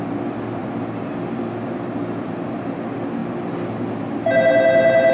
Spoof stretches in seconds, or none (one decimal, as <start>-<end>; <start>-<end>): none

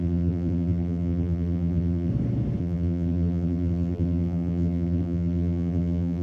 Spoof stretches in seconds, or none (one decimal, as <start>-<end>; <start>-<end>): 0.0-2.1; 2.6-6.2